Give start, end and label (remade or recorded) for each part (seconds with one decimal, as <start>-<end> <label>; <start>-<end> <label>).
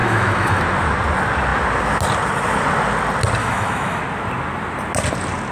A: 0.0-0.6 remade; 0.6-3.4 recorded; 3.4-4.0 remade; 4.0-5.5 recorded